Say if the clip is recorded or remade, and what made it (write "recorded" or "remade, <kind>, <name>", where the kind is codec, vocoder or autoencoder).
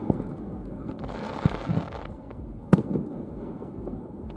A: remade, codec, SNAC